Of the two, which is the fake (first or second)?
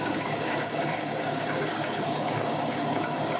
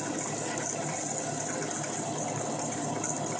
first